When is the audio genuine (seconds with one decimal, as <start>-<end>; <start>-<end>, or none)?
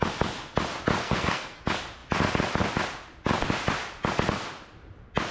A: 0.0-1.0; 1.6-5.3